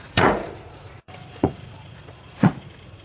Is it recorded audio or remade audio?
remade